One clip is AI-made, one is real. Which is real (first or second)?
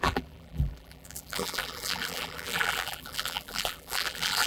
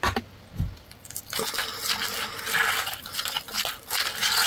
second